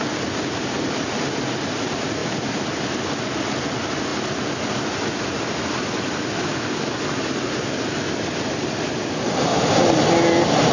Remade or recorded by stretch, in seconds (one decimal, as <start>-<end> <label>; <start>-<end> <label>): 0.0-4.1 remade; 4.1-8.9 recorded; 8.9-9.5 remade; 9.5-10.1 recorded; 10.1-10.7 remade